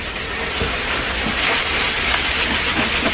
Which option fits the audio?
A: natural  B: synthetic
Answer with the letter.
A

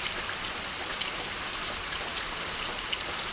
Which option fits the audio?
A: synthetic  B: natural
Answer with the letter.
B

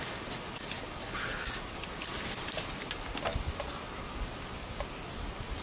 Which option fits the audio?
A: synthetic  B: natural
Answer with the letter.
B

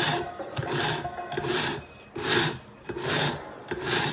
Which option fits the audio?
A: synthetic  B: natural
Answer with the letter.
B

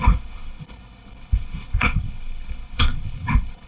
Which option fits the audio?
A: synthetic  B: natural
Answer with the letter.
A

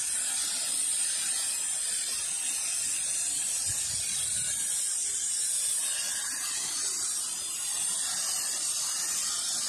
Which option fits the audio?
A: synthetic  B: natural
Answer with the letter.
B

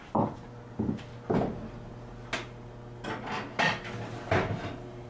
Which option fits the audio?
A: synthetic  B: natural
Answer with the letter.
B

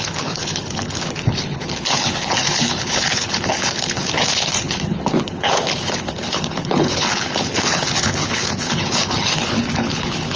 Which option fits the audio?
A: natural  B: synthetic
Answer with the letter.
B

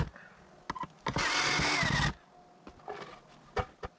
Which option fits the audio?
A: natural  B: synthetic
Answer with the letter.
A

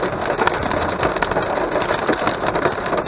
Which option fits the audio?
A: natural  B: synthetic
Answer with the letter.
A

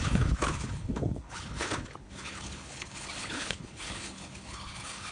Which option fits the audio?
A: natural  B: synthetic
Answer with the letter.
B